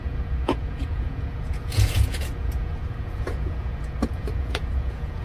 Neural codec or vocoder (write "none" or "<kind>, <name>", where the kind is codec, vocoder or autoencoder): vocoder, Vocos